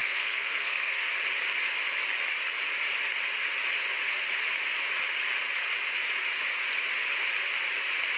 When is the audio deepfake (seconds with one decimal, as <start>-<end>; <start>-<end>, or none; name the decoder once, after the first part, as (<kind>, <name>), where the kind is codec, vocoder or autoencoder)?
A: 0.0-1.1 (codec, SNAC)